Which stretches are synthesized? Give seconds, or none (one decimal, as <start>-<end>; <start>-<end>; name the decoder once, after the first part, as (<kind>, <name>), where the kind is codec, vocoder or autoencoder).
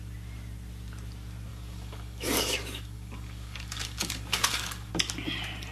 1.5-4.9 (codec, DAC)